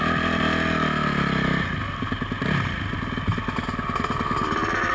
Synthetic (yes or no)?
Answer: no